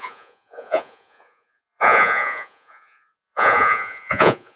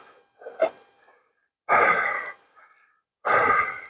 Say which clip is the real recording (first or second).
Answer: second